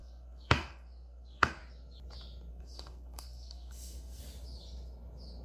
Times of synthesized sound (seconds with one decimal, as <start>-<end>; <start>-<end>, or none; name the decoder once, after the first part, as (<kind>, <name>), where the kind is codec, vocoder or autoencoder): 0.0-1.6 (codec, SNAC); 2.5-4.2

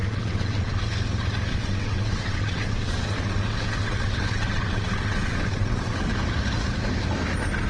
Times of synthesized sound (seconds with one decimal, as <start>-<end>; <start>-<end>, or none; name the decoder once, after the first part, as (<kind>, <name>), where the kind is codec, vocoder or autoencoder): 0.0-0.8 (vocoder, WaveNeXt); 1.5-6.1

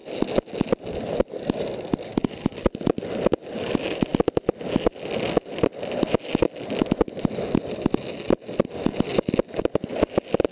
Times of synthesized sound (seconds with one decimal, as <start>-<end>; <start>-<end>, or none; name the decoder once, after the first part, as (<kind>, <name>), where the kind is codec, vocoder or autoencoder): 0.0-3.0 (vocoder, BigVGAN v2); 8.9-9.6

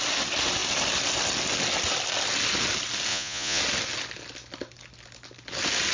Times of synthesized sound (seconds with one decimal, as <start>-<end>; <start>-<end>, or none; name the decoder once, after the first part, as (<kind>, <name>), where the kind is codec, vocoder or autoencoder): 3.1-3.6 (vocoder, Vocos)

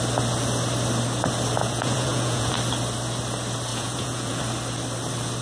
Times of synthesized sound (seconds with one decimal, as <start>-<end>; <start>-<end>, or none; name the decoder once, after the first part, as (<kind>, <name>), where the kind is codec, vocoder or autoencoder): 1.6-2.5 (vocoder, Vocos); 3.7-4.4

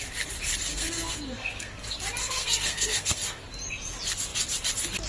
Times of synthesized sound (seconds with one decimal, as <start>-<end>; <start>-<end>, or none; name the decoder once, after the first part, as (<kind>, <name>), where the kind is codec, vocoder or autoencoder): 0.7-1.7 (codec, SNAC); 2.2-3.4

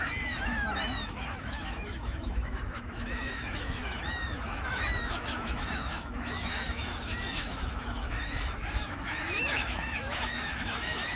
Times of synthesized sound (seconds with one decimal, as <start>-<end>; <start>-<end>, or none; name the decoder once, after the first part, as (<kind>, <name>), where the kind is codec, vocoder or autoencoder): 0.0-11.2 (autoencoder, DAC-VAE)